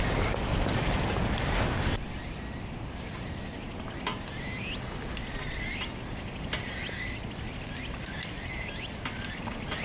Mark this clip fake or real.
real